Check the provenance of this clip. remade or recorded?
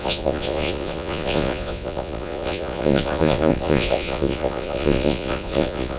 remade